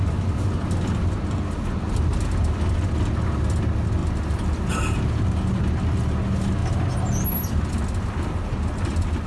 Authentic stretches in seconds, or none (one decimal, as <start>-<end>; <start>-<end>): 0.0-9.3